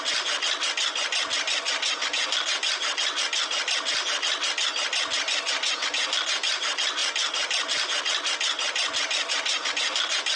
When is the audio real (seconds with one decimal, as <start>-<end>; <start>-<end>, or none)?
0.0-10.4

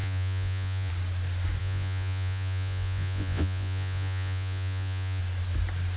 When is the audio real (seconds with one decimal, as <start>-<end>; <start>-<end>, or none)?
0.9-1.6; 5.2-6.0

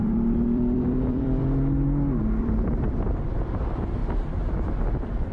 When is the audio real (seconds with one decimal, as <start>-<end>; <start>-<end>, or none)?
1.4-2.4

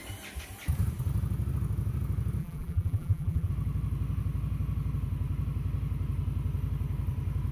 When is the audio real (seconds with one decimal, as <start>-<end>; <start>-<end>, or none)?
0.0-2.4; 3.5-7.5

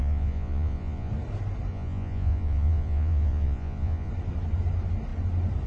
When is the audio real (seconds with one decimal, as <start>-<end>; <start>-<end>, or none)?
1.1-1.7; 4.1-5.7

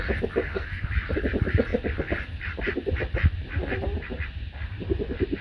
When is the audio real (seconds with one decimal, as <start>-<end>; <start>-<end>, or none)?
0.0-0.4; 0.9-5.4

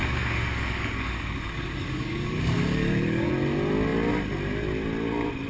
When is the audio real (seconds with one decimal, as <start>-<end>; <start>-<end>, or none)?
3.3-5.5

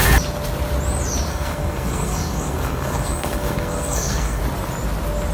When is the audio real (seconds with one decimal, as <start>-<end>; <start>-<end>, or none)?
0.0-1.3; 4.4-5.3